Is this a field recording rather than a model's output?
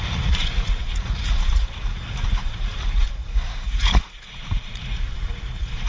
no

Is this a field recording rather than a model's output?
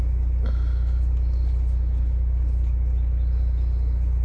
yes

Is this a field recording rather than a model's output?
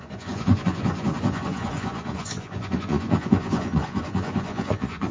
no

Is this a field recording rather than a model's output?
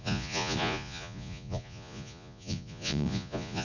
no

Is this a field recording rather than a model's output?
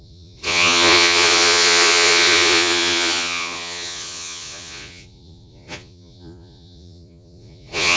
no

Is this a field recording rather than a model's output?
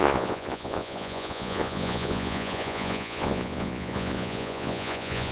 no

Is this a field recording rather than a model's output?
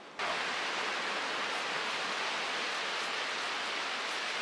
yes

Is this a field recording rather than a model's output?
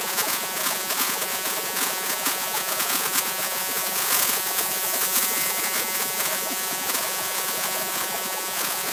no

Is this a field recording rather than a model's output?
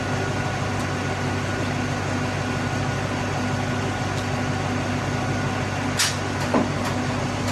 yes